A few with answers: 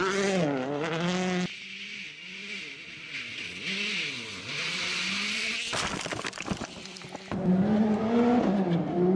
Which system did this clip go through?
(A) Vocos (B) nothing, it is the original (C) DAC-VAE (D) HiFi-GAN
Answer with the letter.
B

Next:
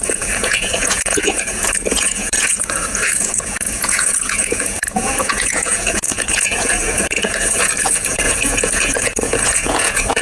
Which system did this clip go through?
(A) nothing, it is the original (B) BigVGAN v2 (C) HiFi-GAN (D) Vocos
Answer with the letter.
D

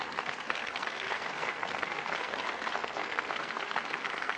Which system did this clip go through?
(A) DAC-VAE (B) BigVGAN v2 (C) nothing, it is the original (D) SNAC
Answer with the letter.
D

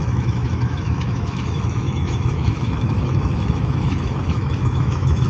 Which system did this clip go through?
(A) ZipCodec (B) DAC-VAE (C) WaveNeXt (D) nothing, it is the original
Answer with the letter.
B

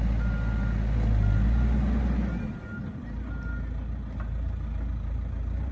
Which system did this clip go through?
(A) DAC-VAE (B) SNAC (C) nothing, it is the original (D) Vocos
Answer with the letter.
C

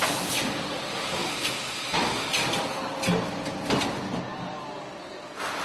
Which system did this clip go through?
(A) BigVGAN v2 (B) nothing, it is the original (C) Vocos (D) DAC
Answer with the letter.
B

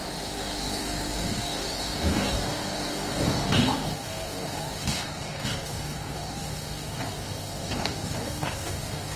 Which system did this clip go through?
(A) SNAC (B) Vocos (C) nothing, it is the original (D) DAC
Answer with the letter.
D